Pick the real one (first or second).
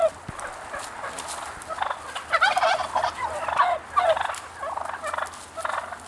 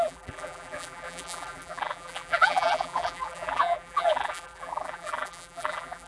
first